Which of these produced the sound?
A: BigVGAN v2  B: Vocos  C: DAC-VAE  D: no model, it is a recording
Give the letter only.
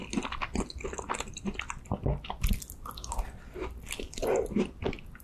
D